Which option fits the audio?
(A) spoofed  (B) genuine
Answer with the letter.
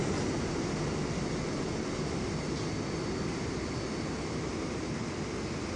B